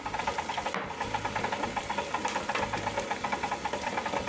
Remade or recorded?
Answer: recorded